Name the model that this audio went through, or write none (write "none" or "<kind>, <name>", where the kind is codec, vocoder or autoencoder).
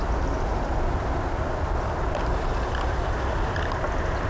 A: none